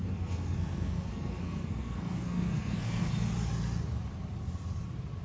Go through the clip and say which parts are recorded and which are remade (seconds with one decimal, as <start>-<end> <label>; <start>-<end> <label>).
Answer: 0.0-3.1 remade; 3.1-5.2 recorded